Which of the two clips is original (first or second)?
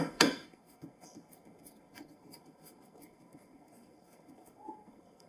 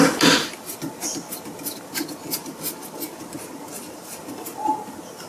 second